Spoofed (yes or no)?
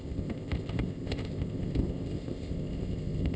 yes